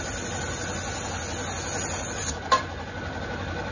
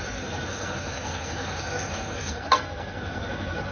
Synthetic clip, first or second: second